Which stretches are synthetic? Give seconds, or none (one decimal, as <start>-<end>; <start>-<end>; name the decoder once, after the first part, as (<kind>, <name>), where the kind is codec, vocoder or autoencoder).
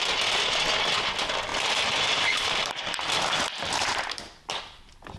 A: 1.5-4.6 (vocoder, BigVGAN v2)